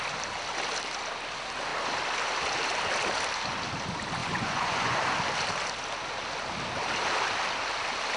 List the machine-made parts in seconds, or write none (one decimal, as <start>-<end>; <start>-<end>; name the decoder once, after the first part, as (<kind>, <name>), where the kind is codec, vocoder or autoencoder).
4.2-5.0 (vocoder, Vocos)